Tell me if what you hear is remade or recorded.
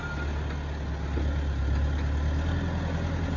recorded